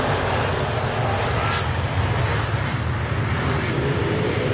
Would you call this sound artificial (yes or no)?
no